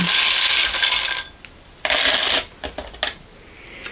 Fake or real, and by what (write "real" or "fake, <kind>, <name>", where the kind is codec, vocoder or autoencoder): real